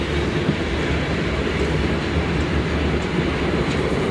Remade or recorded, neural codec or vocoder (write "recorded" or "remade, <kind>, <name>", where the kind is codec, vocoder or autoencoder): recorded